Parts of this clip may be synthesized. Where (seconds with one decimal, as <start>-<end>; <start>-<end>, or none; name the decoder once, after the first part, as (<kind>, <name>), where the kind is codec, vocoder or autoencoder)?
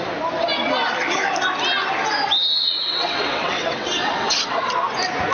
2.6-4.7 (vocoder, WaveNeXt)